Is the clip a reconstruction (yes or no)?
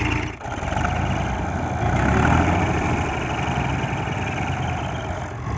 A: no